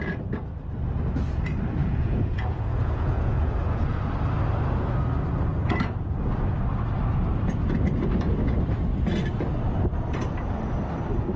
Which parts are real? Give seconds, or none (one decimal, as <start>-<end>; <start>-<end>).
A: 0.0-1.8; 4.0-11.4